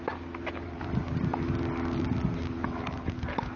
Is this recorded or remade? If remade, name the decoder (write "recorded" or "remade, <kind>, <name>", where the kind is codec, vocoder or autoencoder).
recorded